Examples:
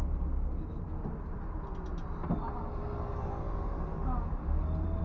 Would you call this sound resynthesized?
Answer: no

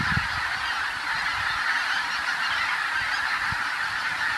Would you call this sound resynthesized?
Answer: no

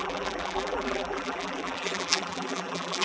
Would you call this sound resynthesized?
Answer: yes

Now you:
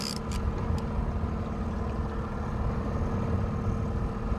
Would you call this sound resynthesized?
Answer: no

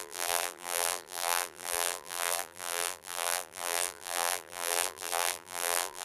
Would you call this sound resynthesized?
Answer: yes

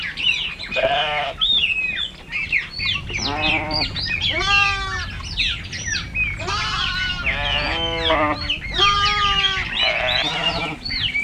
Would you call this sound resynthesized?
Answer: no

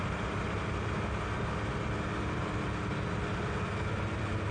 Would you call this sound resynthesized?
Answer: no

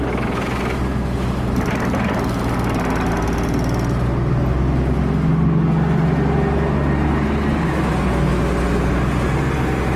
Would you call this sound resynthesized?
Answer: no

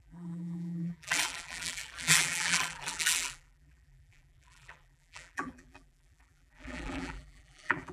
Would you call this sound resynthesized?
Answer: yes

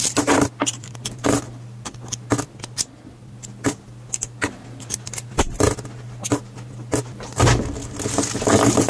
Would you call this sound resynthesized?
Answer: no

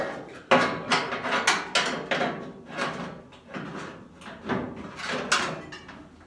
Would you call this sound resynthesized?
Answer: no